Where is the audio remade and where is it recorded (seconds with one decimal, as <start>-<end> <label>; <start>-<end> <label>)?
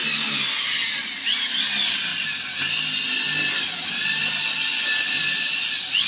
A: 0.0-6.1 recorded